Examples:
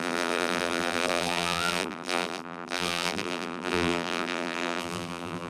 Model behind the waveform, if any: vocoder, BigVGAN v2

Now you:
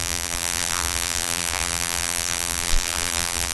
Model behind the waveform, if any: vocoder, BigVGAN v2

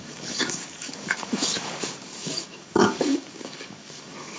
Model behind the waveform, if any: codec, DAC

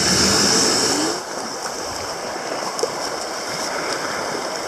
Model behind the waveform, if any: none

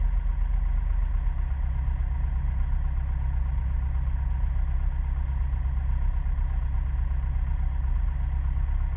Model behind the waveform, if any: none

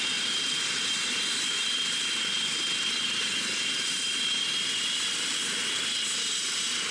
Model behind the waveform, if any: none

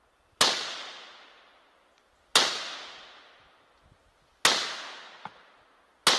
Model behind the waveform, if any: none